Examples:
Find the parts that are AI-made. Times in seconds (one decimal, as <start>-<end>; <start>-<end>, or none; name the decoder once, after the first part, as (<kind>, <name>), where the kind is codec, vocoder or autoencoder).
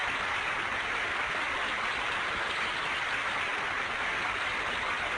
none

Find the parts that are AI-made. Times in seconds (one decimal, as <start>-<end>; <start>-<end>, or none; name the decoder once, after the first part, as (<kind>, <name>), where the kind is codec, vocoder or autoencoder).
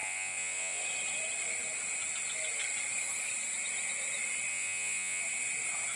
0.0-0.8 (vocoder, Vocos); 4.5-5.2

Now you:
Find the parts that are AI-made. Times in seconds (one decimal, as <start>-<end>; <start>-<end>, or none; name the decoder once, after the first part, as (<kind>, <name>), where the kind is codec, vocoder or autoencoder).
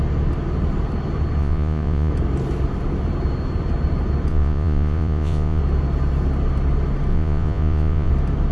1.4-2.1 (vocoder, Vocos); 4.3-5.6; 7.1-8.1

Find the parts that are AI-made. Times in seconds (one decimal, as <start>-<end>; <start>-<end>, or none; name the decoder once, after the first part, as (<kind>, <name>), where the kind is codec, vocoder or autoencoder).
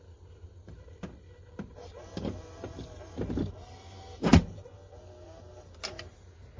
none